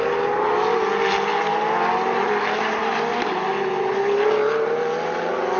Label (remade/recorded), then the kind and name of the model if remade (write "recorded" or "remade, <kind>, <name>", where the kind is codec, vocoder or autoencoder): recorded